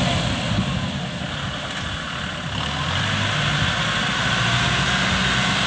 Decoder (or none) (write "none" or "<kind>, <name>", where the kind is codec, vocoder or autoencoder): none